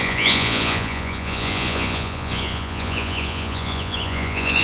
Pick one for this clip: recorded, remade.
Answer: remade